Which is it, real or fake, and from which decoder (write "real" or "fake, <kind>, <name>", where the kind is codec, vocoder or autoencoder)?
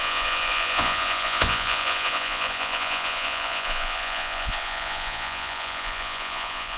fake, vocoder, Vocos